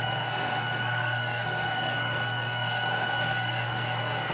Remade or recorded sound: remade